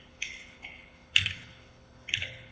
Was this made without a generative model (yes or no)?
no